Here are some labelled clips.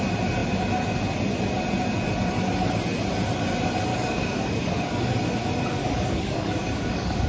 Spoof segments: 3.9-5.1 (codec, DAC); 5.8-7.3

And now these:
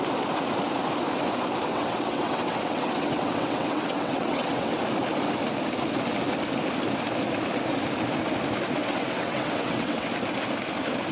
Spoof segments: 1.7-4.8 (vocoder, WaveNeXt); 8.8-10.1